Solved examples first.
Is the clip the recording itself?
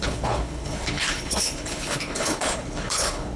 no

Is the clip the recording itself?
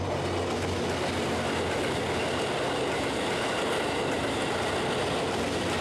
yes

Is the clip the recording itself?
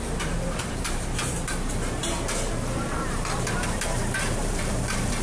no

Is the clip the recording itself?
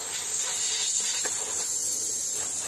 yes